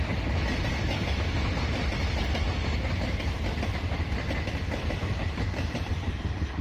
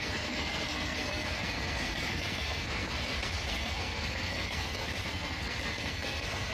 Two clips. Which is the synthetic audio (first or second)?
second